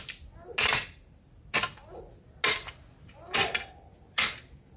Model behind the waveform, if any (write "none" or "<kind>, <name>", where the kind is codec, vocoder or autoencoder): none